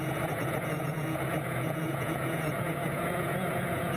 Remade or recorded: remade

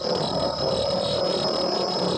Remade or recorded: recorded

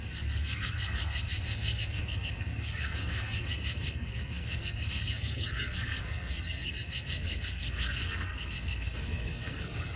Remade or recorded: remade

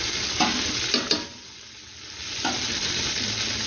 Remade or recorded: recorded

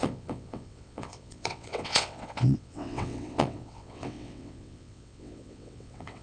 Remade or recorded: remade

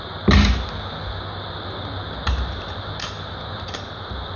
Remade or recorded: recorded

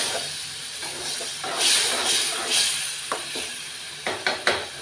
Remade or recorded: remade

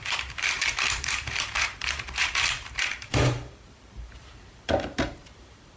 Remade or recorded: remade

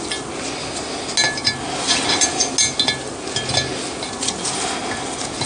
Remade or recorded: recorded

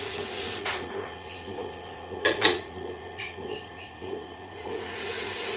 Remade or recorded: remade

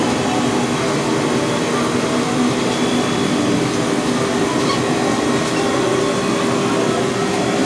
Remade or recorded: recorded